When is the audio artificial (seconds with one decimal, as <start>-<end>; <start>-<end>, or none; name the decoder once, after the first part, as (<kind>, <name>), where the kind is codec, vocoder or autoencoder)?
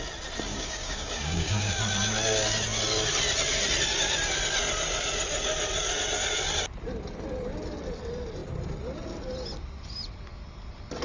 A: 0.5-1.7 (codec, DAC)